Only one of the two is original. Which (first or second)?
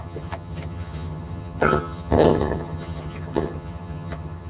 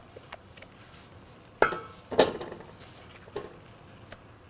second